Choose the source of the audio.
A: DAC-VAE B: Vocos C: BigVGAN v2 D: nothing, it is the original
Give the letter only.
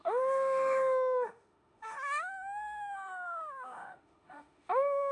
A